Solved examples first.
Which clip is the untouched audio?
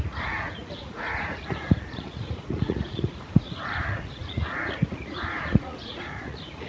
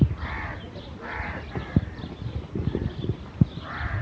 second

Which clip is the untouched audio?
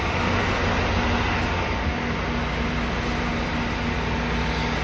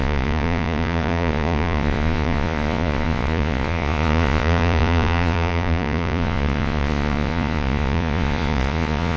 first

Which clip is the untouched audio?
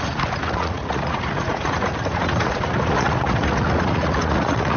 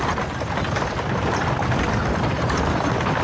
second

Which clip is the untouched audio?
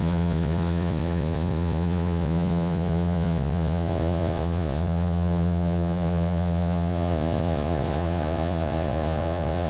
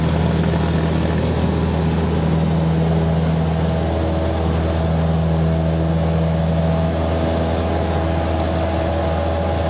second